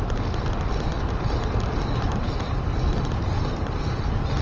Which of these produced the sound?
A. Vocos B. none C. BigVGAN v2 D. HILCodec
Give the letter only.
B